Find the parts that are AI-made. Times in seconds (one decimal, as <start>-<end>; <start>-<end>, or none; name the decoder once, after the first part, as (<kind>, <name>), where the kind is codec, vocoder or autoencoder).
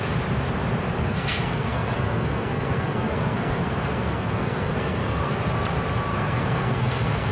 1.0-5.4 (codec, SNAC); 6.1-7.3